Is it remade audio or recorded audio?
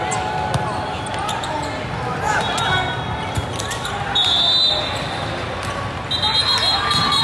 recorded